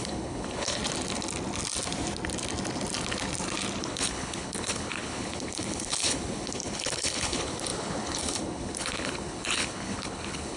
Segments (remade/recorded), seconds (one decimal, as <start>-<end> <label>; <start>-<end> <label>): 0.0-0.8 remade; 0.8-3.8 recorded; 3.8-10.6 remade